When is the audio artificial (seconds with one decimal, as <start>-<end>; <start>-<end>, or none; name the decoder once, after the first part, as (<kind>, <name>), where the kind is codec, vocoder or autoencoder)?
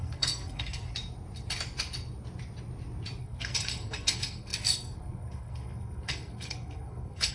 0.0-0.8 (codec, SNAC); 3.2-7.3